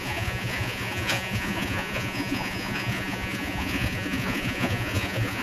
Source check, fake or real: fake